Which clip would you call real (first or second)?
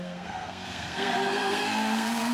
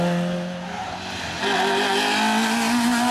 second